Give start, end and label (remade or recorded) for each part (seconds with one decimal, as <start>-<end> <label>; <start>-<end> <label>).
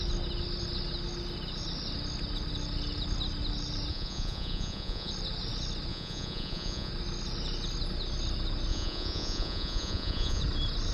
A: 0.0-3.9 recorded; 3.9-5.1 remade; 5.1-5.9 recorded; 5.9-6.9 remade; 6.9-8.7 recorded; 8.7-10.4 remade; 10.4-10.9 recorded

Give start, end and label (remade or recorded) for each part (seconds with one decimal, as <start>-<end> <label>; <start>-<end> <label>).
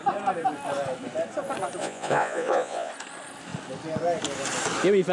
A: 0.0-1.8 recorded; 1.8-2.9 remade; 2.9-5.1 recorded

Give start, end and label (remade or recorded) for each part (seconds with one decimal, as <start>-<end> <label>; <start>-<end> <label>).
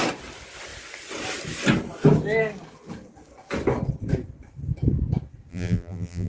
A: 0.0-5.5 recorded; 5.5-6.3 remade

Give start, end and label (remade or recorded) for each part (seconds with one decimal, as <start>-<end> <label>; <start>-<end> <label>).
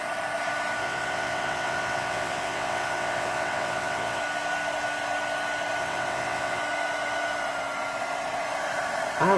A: 0.0-0.8 recorded; 0.8-4.2 remade; 4.2-5.8 recorded; 5.8-6.6 remade; 6.6-9.4 recorded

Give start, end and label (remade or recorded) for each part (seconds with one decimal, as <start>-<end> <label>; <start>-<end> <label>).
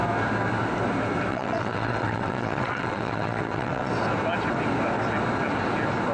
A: 0.0-1.3 recorded; 1.3-3.9 remade; 3.9-6.1 recorded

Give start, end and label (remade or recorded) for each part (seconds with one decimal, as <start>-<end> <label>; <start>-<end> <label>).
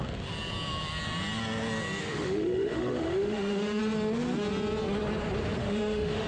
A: 0.0-2.0 recorded; 2.0-3.8 remade; 3.8-5.6 recorded; 5.6-6.3 remade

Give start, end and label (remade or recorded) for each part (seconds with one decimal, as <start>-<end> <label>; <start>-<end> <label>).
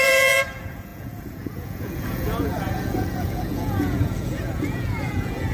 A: 0.0-5.5 remade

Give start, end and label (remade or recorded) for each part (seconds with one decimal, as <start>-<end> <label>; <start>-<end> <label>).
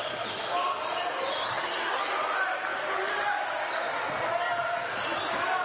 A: 0.0-1.5 recorded; 1.5-2.0 remade; 2.0-5.6 recorded